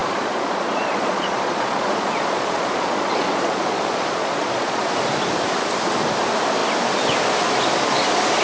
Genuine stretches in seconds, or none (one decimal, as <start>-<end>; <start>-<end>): 4.8-8.4